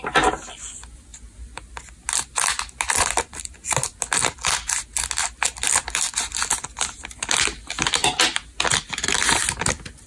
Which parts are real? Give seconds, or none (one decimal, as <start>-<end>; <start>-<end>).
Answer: 0.0-10.1